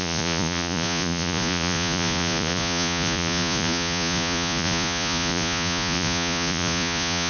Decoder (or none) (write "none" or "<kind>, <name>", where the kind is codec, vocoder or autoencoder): vocoder, Vocos